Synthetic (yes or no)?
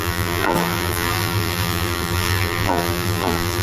yes